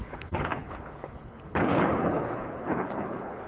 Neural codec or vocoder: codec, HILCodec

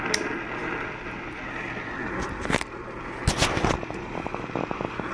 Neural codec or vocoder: none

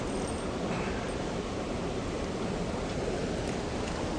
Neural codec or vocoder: none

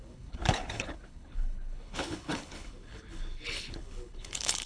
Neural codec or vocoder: codec, HILCodec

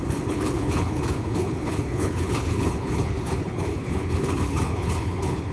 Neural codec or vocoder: codec, HILCodec